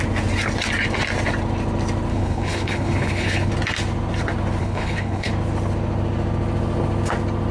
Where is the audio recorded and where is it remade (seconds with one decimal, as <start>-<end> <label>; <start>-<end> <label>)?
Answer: 0.0-2.1 recorded; 2.1-3.5 remade; 3.5-4.6 recorded; 4.6-5.3 remade; 5.3-7.5 recorded